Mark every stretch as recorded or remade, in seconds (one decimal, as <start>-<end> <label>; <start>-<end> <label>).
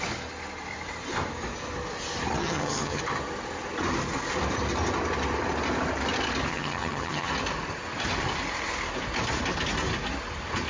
0.0-2.4 recorded; 2.4-3.0 remade; 3.0-6.5 recorded; 6.5-7.3 remade; 7.3-10.7 recorded